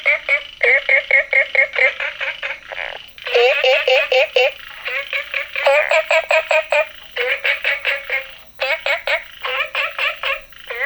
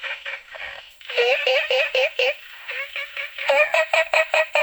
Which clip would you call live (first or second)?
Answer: first